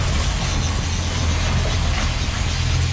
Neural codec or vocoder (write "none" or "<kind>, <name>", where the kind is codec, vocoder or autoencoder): none